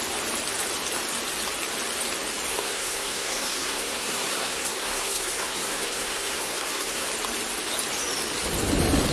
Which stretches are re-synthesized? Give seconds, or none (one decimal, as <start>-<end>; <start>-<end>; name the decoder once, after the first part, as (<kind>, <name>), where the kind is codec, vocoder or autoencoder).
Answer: 2.5-7.1 (codec, SNAC)